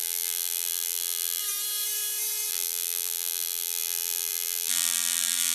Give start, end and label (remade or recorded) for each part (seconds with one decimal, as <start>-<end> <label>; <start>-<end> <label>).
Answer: 0.0-1.4 remade; 1.4-2.5 recorded; 2.5-5.5 remade